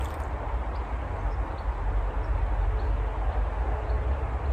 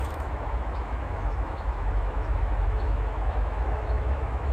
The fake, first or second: second